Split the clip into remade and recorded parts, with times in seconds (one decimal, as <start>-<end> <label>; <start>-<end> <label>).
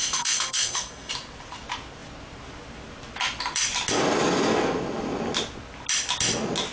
0.0-1.1 remade; 1.1-6.7 recorded